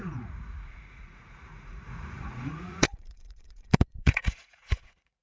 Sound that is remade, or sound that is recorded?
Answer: remade